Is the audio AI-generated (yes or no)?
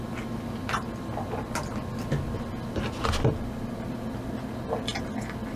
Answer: no